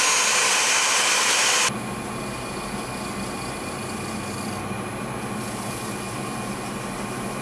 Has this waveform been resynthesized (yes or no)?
no